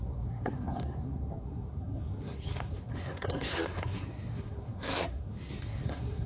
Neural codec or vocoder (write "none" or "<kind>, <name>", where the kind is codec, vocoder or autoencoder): codec, SNAC